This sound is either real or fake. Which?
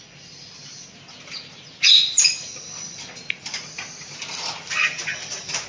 real